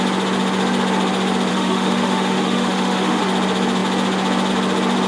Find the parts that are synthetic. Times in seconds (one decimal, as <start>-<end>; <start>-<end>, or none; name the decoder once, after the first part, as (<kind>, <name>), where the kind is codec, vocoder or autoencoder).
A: 1.5-3.2 (autoencoder, DAC-VAE)